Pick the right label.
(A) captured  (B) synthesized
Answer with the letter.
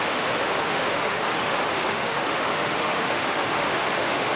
B